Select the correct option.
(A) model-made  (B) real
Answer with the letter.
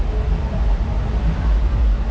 B